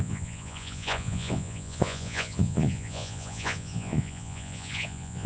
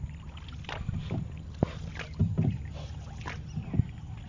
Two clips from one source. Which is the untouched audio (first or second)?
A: second